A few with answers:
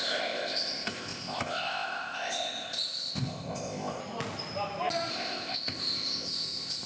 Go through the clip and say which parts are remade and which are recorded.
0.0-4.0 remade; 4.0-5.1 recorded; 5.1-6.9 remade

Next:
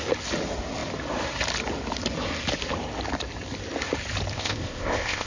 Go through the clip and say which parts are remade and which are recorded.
0.0-4.3 recorded; 4.3-5.3 remade

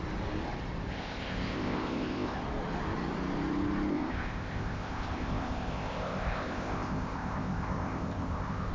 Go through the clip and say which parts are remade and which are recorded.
0.0-0.9 recorded; 0.9-2.4 remade; 2.4-3.9 recorded; 3.9-8.7 remade

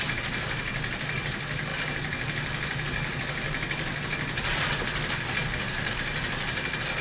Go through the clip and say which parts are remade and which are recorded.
0.0-7.0 recorded

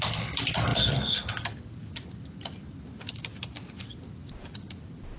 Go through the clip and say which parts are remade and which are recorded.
0.0-5.2 recorded

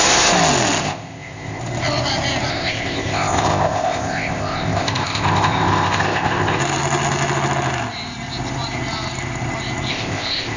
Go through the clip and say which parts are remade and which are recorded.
0.0-0.8 recorded; 0.8-1.6 remade; 1.6-2.5 recorded; 2.5-6.6 remade; 6.6-9.9 recorded; 9.9-10.6 remade

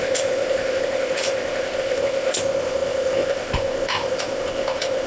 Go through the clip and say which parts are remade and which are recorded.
0.0-5.1 remade

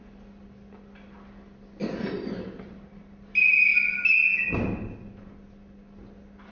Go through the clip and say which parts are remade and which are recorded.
0.0-6.5 recorded